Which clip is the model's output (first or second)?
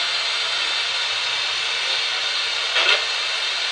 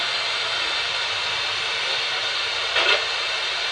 second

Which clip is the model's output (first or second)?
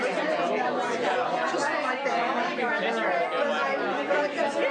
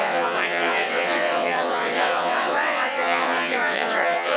second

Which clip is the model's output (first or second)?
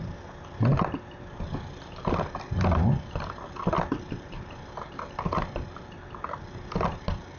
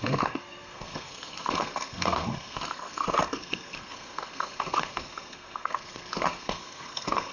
second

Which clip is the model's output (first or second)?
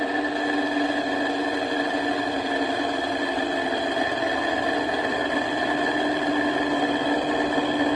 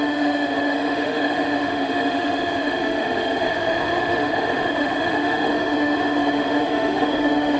second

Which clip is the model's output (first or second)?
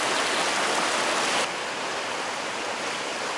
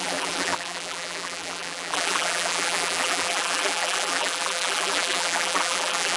second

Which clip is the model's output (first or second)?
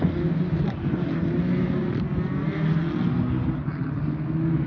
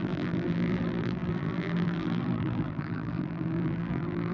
second